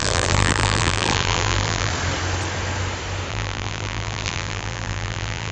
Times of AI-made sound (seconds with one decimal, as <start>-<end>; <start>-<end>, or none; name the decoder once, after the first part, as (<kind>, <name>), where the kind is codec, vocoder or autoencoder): 0.0-1.9 (vocoder, BigVGAN v2); 3.3-5.5

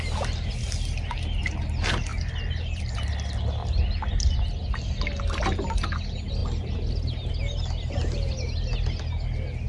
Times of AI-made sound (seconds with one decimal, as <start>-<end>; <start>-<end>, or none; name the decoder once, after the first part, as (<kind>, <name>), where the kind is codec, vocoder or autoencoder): none

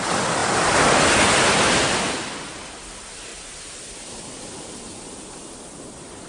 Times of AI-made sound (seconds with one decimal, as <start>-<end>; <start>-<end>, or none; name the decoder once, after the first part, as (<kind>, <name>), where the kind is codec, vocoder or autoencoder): none

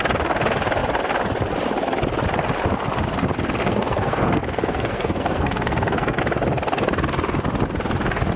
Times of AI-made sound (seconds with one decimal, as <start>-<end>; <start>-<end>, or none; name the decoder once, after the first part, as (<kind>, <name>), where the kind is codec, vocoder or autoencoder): 3.6-6.2 (codec, SNAC)

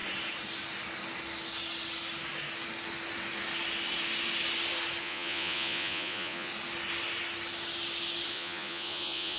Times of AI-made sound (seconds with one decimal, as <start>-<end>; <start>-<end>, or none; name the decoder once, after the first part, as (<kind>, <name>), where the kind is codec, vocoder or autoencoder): 5.0-6.5 (vocoder, Vocos); 8.3-9.4

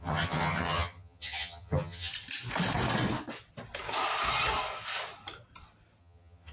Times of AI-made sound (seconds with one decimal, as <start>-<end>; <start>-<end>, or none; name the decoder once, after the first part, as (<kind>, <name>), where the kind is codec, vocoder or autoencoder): 0.0-2.1 (vocoder, HiFi-GAN); 6.0-6.5